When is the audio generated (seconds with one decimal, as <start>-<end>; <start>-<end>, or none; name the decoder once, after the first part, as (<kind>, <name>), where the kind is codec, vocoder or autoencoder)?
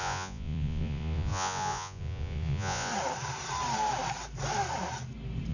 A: 0.0-2.9 (vocoder, Vocos)